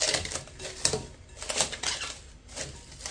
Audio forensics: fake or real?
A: real